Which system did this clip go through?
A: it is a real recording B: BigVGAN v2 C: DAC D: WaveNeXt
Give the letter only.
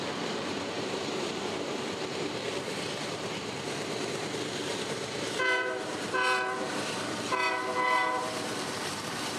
B